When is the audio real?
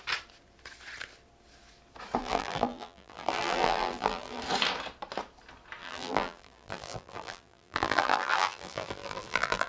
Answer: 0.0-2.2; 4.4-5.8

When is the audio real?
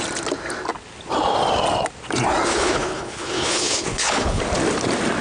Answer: 0.0-2.5; 4.4-5.2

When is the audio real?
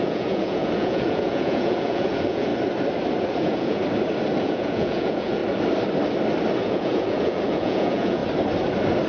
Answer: 2.5-3.2; 3.8-4.4; 5.4-6.6; 8.2-9.1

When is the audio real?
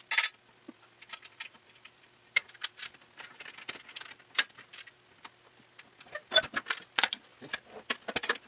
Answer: 0.0-8.5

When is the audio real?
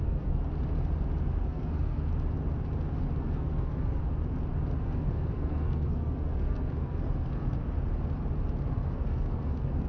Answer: 0.4-1.4; 2.1-3.2; 4.0-4.8; 7.6-8.7